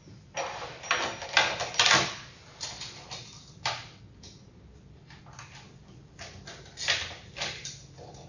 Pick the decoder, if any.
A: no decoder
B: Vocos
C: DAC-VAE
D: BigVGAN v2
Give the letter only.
A